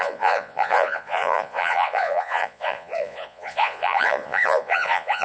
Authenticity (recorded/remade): remade